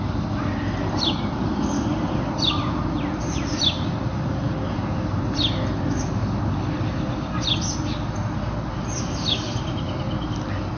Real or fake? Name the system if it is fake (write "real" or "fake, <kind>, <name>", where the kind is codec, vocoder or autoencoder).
real